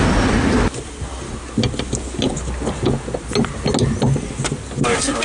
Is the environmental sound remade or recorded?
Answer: recorded